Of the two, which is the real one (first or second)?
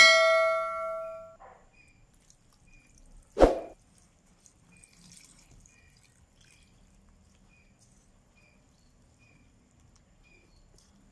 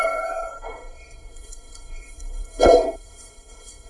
first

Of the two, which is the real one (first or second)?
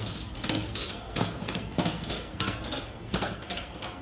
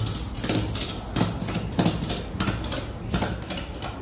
second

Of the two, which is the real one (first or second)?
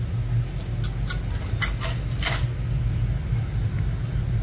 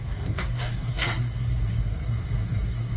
first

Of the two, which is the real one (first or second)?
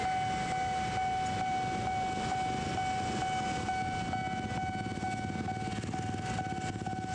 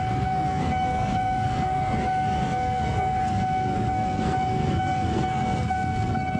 first